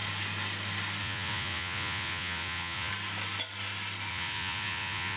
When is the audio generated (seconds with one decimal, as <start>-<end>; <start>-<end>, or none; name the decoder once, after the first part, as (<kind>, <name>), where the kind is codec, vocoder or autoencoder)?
1.0-2.9 (vocoder, Vocos); 4.1-5.2